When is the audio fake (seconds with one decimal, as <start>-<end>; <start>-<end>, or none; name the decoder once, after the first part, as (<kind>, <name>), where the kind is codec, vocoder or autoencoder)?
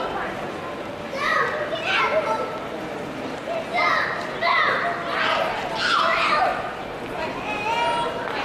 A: 6.5-7.0 (vocoder, BigVGAN v2)